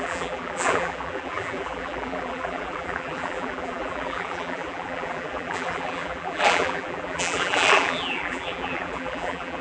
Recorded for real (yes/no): no